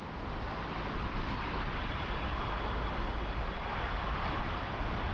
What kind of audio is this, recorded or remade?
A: recorded